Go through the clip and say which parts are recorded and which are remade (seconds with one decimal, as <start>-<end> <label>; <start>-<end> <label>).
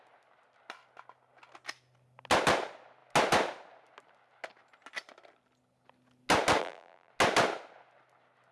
0.0-6.6 recorded; 6.6-7.1 remade; 7.1-8.5 recorded